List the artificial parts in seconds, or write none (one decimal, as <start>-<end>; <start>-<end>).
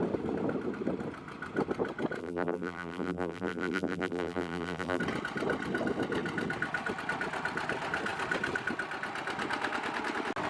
2.2-5.0